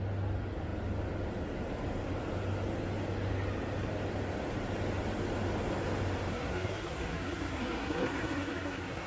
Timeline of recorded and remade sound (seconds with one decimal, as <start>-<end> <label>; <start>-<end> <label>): 0.0-6.3 recorded; 6.3-9.1 remade